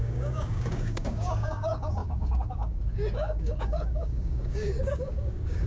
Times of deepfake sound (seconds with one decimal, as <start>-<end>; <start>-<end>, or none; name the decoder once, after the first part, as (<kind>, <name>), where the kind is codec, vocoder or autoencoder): 0.0-5.7 (codec, DAC)